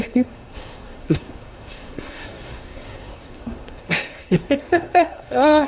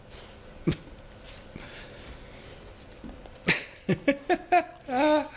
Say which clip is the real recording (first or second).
second